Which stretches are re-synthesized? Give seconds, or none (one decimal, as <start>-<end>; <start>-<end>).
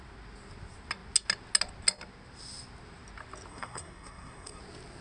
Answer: 3.5-4.6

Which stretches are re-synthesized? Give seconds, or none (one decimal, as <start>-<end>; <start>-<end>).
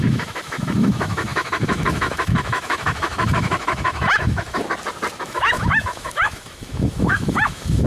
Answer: 0.0-4.6; 5.2-7.9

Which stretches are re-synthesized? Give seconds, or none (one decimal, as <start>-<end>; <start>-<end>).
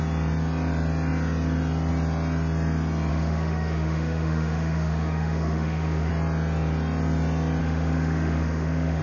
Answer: 3.1-6.1; 7.6-9.0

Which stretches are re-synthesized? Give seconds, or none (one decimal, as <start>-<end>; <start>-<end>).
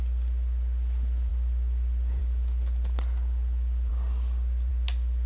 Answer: none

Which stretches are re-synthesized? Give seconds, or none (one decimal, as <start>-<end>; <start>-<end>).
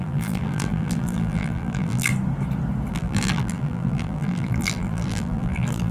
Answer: 0.0-2.1; 2.9-5.9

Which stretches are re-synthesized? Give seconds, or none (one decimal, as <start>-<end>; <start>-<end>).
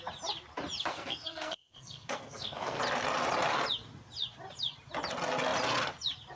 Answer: 0.9-2.8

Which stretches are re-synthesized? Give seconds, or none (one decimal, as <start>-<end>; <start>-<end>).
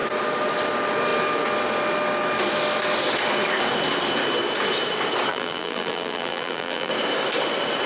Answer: 5.3-6.9